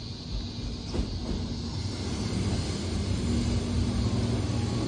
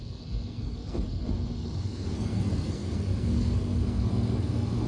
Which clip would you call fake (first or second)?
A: second